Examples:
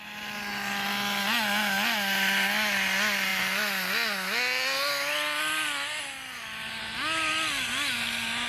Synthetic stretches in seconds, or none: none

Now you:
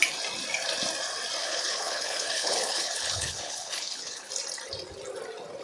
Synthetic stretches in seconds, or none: 1.4-4.3 (codec, HILCodec)

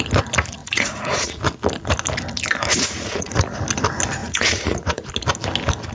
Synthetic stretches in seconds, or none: 0.6-1.4 (vocoder, Vocos); 2.7-3.6; 4.2-5.1